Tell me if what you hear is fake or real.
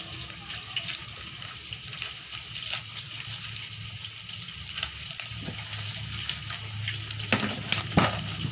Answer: real